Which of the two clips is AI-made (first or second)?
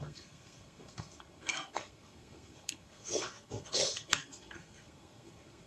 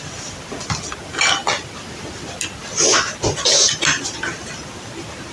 first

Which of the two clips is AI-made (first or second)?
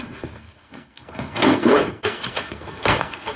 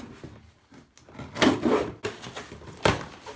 first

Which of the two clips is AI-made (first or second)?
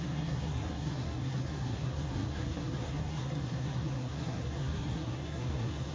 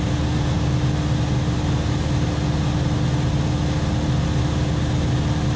first